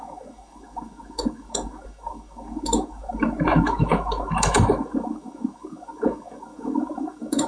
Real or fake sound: fake